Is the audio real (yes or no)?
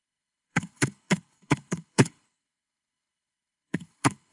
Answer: no